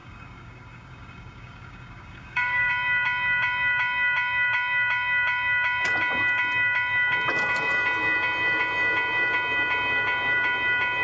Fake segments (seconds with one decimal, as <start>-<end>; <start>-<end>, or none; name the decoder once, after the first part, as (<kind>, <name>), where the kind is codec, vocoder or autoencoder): 0.0-2.7 (codec, DAC)